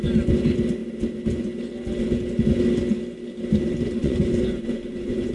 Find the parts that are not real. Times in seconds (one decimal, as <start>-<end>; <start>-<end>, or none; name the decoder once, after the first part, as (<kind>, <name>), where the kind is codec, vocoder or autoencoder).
4.0-5.3 (vocoder, Vocos)